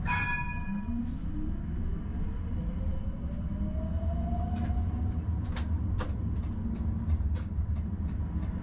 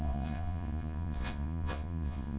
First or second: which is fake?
second